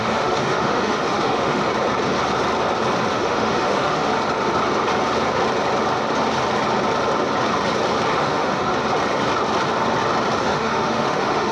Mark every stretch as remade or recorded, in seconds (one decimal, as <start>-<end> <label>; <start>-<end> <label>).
0.0-1.7 remade; 1.7-3.1 recorded; 3.1-4.1 remade; 4.1-8.1 recorded; 8.1-8.7 remade; 8.7-10.4 recorded; 10.4-11.5 remade